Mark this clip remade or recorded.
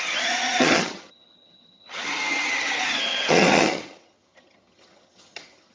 remade